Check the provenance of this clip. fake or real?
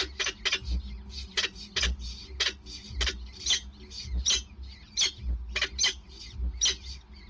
real